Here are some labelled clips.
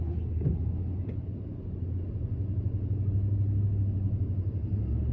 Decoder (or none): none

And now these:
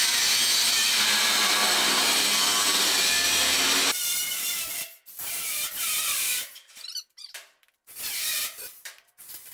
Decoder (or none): vocoder, BigVGAN v2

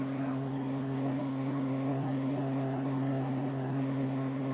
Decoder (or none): codec, SNAC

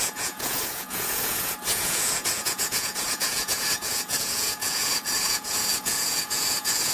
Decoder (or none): vocoder, Vocos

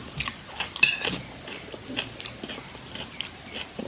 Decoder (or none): none